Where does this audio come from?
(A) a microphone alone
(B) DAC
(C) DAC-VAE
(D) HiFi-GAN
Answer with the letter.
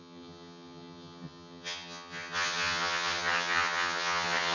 D